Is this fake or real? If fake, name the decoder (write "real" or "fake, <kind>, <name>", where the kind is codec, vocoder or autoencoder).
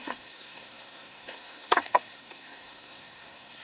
fake, codec, SNAC